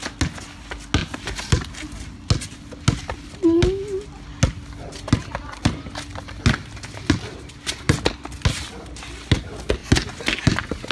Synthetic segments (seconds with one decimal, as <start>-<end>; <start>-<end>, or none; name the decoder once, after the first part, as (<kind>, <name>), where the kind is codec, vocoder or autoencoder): none